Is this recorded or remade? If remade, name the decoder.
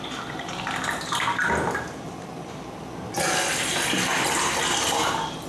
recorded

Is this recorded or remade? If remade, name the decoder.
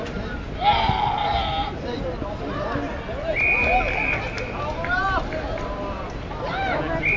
recorded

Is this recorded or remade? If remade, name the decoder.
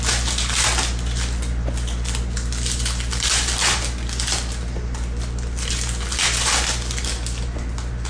recorded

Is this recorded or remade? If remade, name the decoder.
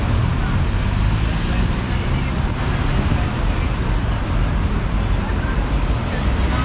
recorded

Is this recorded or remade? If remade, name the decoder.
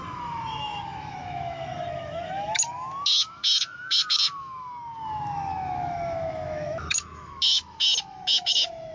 remade, autoencoder, DAC-VAE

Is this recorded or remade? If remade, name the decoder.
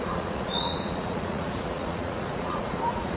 remade, vocoder, Vocos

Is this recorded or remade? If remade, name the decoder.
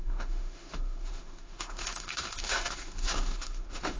remade, autoencoder, DAC-VAE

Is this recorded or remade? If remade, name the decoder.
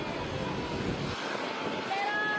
recorded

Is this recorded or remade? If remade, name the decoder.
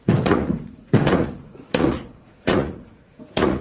remade, vocoder, Vocos